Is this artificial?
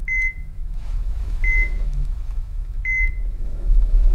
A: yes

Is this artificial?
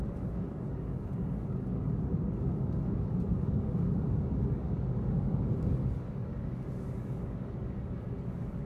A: yes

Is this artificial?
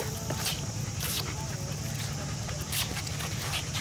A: no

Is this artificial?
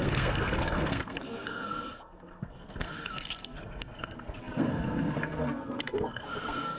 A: yes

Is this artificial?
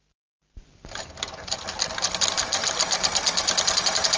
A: no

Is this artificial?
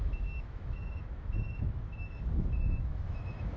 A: yes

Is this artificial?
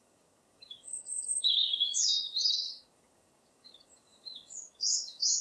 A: yes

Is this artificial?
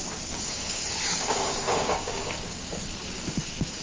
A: yes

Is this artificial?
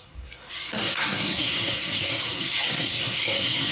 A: yes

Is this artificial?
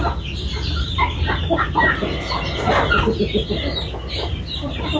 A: no